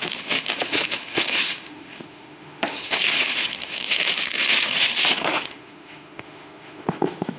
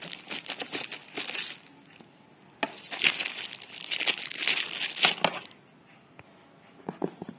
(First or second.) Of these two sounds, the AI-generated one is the first